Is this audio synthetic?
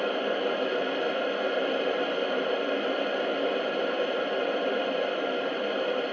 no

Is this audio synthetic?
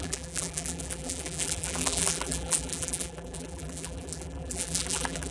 yes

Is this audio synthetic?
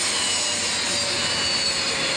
no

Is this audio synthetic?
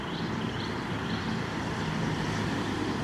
yes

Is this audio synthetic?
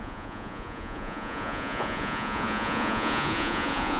yes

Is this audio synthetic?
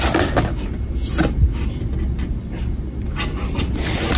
no